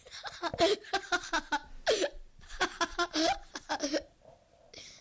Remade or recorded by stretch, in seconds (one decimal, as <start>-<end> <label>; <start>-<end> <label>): 0.0-5.0 recorded